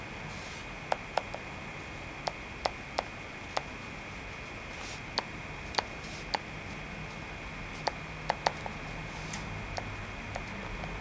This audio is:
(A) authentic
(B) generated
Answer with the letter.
A